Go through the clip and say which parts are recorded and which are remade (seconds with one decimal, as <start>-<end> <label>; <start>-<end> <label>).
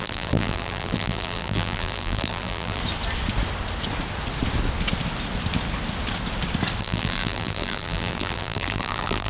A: 0.0-2.8 remade; 2.8-6.8 recorded; 6.8-9.3 remade